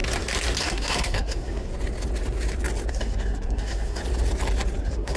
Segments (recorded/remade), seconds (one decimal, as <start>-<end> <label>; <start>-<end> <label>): 0.0-0.6 recorded; 0.6-1.7 remade; 1.7-2.9 recorded; 2.9-4.0 remade; 4.0-4.8 recorded; 4.8-5.2 remade